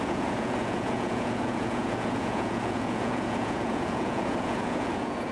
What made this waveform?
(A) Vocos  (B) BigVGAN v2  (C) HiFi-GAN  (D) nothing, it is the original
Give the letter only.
A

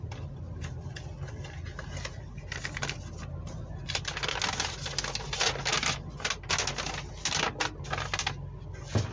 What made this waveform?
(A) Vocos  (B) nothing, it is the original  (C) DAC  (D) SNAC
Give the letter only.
B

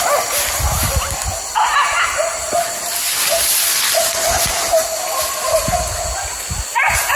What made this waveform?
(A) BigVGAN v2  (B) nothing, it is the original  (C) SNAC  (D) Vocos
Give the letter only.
B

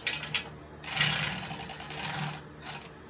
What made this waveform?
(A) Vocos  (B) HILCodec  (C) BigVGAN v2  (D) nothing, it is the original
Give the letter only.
D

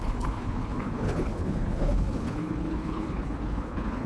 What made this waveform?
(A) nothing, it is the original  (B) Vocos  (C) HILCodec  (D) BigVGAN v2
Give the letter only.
C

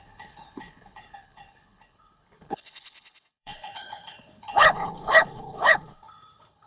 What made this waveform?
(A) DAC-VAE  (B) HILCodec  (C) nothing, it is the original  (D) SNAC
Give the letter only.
B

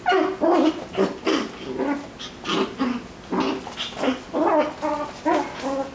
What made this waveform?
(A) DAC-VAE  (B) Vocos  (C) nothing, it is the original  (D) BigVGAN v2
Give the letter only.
C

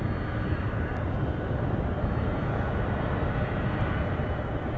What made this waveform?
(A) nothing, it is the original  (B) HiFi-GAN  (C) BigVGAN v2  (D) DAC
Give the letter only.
A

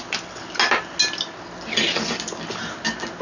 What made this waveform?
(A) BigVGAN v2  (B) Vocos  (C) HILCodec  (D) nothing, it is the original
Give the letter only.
D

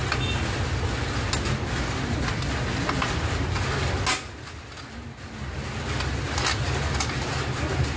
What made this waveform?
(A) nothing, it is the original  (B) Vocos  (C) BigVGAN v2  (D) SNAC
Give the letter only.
A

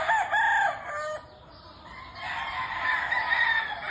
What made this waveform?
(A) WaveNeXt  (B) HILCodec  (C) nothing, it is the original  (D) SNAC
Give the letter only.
C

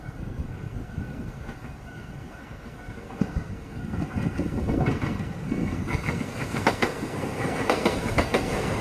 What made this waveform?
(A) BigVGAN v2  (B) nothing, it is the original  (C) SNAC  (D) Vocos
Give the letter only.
C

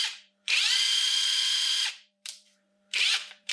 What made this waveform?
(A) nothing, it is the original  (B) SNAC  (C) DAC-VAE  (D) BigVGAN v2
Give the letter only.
D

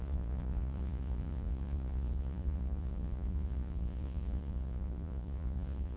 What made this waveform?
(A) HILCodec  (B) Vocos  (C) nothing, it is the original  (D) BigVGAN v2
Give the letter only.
B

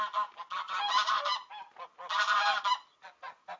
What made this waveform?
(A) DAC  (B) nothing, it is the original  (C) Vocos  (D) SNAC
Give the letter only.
B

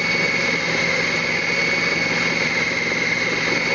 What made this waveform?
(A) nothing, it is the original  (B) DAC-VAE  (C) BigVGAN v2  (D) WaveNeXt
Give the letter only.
A